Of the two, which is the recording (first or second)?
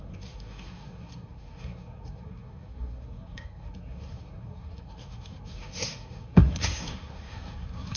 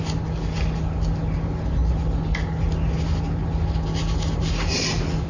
second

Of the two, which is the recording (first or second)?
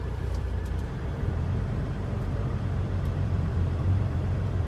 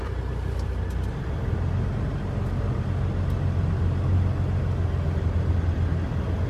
second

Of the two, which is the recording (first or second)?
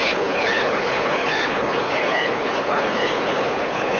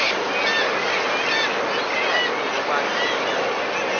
second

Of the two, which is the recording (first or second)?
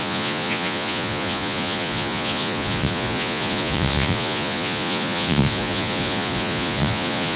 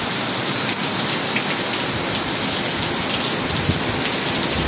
second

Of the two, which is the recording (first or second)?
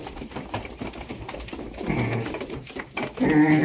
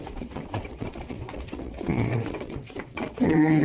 first